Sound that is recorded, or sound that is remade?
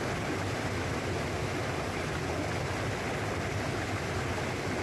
recorded